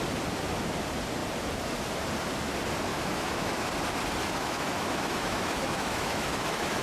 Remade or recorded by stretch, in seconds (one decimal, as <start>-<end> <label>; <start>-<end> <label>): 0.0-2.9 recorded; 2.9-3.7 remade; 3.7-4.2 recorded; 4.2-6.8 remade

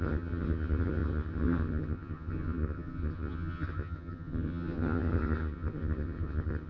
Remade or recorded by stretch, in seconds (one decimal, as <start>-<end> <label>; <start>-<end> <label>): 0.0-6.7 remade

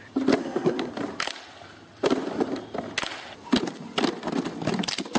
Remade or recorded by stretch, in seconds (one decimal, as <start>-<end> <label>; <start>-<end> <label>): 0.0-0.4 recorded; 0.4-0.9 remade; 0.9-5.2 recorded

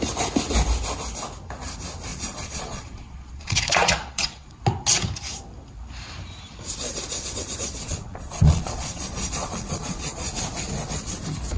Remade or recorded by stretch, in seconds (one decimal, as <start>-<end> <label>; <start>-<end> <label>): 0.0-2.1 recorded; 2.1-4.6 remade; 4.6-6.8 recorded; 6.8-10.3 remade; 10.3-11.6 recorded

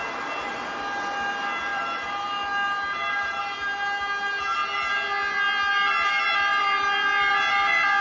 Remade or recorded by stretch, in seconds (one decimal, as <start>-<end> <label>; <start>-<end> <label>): 0.0-1.7 recorded; 1.7-3.4 remade; 3.4-6.5 recorded; 6.5-7.3 remade; 7.3-8.0 recorded